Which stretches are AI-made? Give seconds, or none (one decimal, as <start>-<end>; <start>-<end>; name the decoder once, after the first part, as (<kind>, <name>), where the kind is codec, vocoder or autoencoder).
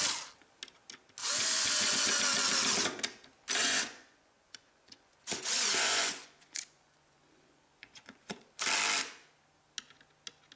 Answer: 1.2-2.2 (vocoder, Vocos); 3.6-8.5